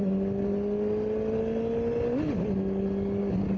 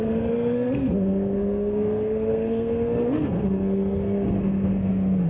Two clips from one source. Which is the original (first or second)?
first